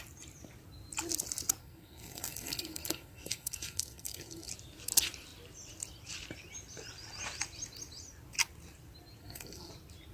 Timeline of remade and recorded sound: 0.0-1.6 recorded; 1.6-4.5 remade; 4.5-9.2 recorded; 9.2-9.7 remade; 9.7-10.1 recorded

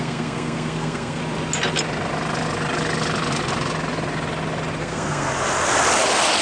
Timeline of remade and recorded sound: 0.0-1.2 remade; 1.2-4.8 recorded; 4.8-5.3 remade; 5.3-6.4 recorded

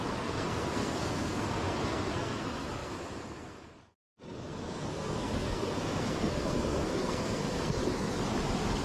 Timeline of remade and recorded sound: 0.0-7.8 remade; 7.8-8.8 recorded

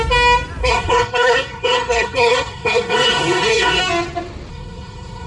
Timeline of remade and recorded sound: 0.0-0.6 recorded; 0.6-3.8 remade; 3.8-4.5 recorded; 4.5-5.3 remade